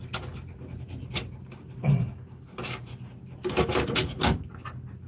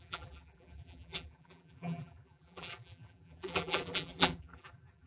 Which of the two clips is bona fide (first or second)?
first